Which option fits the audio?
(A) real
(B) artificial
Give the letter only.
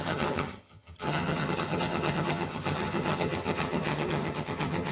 B